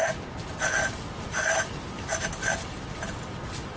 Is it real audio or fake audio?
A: real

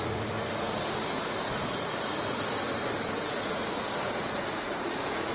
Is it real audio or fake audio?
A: fake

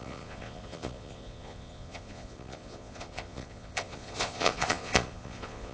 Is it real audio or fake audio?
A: fake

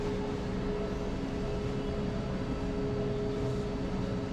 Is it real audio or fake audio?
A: real